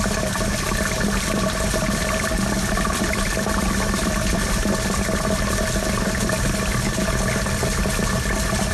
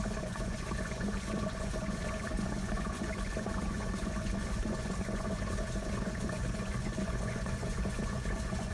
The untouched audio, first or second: first